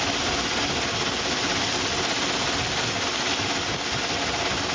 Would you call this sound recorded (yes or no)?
yes